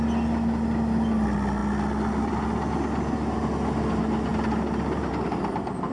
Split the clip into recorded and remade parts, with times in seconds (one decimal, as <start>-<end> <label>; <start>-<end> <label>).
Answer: 0.0-5.9 recorded